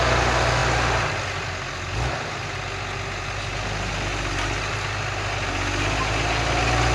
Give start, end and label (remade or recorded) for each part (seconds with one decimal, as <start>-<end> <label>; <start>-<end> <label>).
0.0-6.9 recorded